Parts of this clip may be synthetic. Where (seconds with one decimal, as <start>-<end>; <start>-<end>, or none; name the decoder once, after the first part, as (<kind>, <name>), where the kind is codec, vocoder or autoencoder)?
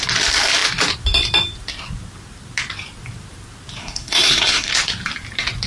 3.8-4.7 (codec, SNAC)